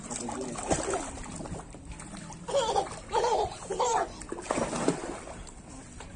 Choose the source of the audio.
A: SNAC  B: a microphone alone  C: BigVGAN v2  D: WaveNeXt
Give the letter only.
B